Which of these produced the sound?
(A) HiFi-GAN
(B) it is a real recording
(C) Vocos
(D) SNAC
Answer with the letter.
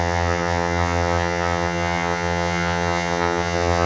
A